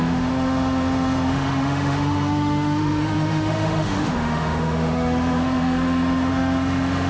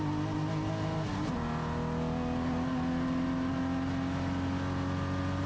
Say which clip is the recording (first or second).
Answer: second